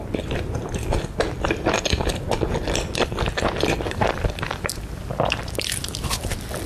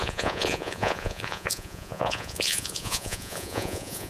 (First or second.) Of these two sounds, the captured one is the first